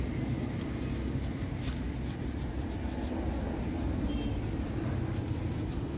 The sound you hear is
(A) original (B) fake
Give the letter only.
A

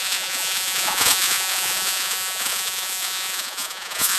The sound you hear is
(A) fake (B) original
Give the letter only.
A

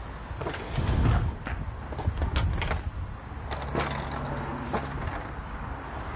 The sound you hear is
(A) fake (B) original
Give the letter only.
B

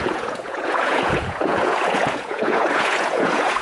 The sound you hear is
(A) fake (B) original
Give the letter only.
A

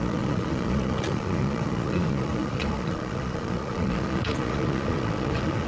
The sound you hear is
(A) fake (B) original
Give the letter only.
A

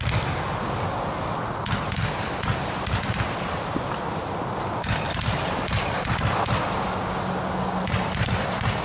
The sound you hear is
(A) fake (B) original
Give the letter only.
B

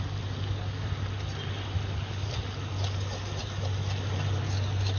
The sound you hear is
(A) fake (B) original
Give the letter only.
B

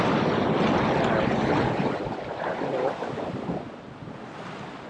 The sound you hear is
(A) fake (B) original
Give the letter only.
B